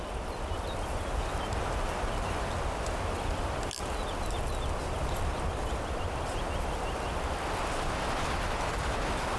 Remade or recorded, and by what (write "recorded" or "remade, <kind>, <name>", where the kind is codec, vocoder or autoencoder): recorded